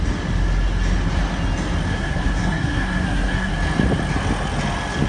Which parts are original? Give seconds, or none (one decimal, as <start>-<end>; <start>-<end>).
0.0-1.9; 3.5-5.1